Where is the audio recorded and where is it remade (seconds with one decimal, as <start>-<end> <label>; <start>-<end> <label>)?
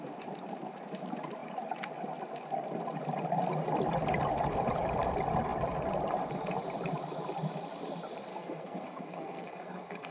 0.0-8.3 recorded; 8.3-10.1 remade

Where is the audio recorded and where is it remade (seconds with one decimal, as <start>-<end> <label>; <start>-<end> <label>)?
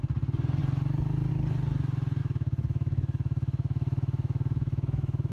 0.0-2.2 recorded; 2.2-5.3 remade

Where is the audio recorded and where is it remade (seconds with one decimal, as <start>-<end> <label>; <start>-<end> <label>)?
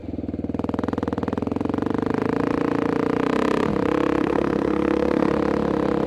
0.0-4.2 recorded; 4.2-5.3 remade; 5.3-6.1 recorded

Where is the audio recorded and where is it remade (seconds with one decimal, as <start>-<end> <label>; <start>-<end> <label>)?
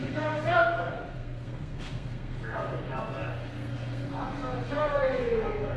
0.0-5.8 remade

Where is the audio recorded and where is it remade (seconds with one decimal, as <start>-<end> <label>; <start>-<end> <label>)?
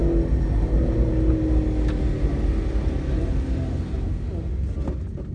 0.0-5.3 recorded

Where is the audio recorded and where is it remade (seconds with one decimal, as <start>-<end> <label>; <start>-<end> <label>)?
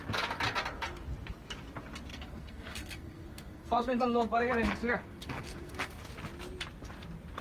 0.0-2.1 recorded; 2.1-6.0 remade; 6.0-7.4 recorded